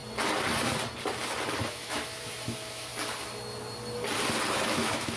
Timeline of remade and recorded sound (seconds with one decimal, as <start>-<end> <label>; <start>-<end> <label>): 0.0-1.7 recorded; 1.7-2.9 remade; 2.9-4.5 recorded; 4.5-5.2 remade